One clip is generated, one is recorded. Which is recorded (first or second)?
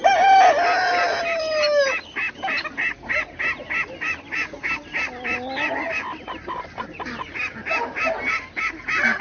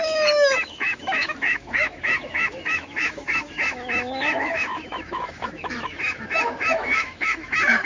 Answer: first